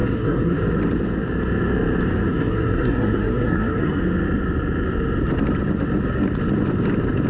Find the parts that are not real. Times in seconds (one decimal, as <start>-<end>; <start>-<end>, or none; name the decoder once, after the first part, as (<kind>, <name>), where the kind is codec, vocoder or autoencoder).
0.0-0.6 (codec, SNAC); 2.3-4.0

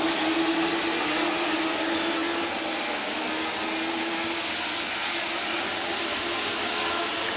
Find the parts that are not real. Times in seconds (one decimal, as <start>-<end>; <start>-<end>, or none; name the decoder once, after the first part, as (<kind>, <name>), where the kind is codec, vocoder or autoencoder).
none

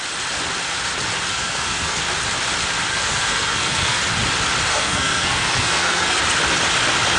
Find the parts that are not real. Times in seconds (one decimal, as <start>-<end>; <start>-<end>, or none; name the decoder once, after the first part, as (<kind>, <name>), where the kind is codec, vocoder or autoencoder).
1.3-2.0 (codec, SNAC); 2.9-4.0; 4.7-6.2

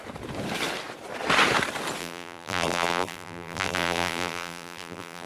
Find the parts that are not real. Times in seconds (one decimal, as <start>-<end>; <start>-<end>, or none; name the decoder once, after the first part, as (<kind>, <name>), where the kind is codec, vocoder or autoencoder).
2.0-5.3 (vocoder, BigVGAN v2)